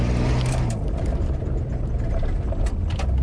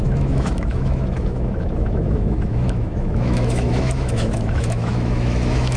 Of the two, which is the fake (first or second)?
second